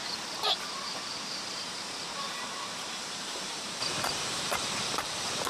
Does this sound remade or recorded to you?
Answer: remade